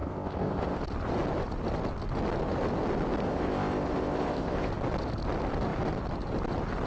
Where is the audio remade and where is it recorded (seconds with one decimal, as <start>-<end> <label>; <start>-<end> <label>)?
0.0-0.8 remade; 0.8-3.3 recorded; 3.3-4.7 remade; 4.7-6.9 recorded